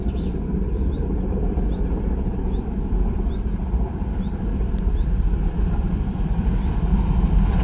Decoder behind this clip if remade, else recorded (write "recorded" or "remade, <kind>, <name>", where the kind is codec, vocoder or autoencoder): remade, vocoder, BigVGAN v2